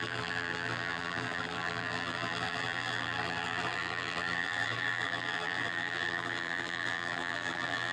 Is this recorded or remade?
remade